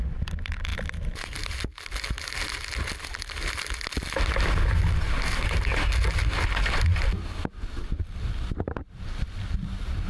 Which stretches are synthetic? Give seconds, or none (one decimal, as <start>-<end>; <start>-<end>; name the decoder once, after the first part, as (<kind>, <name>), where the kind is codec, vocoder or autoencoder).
none